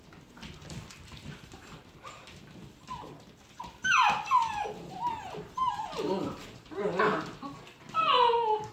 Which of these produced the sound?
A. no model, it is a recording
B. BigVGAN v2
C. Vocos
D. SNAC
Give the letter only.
A